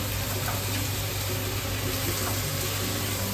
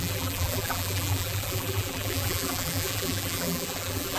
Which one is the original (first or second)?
first